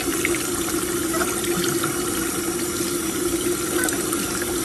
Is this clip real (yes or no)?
yes